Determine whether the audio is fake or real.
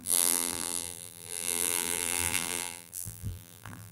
fake